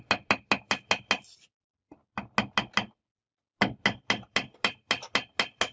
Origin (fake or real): real